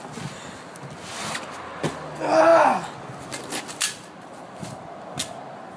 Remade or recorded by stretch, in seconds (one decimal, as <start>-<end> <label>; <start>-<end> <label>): 0.0-5.8 recorded